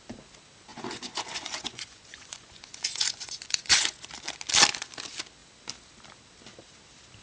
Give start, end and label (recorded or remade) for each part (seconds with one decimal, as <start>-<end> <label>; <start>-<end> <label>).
0.0-0.7 recorded; 0.7-4.1 remade; 4.1-7.2 recorded